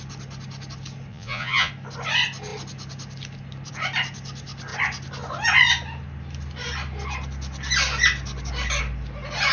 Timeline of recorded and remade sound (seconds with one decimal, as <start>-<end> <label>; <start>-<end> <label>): 0.0-1.1 recorded; 1.1-1.7 remade; 1.7-9.5 recorded